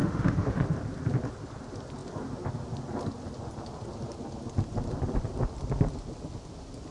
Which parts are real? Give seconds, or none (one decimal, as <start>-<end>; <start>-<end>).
0.6-6.9